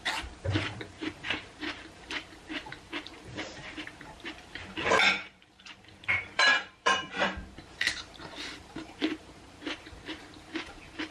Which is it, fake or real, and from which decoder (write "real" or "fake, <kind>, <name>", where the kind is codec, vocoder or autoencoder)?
fake, vocoder, BigVGAN v2